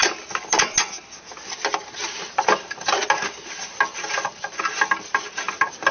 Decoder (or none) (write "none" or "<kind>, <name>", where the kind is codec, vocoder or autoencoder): none